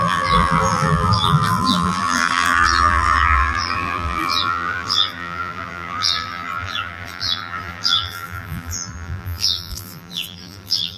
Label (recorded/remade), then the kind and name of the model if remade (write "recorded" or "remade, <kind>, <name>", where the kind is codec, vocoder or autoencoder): remade, vocoder, BigVGAN v2